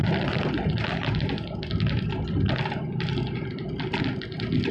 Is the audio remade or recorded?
recorded